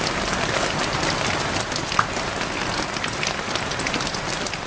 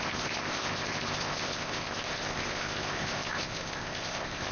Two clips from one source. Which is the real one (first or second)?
first